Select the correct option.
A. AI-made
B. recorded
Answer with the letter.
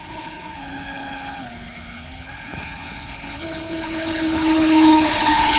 A